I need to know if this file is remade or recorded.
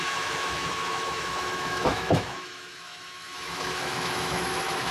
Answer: remade